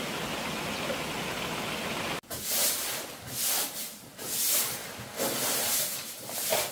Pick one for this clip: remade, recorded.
recorded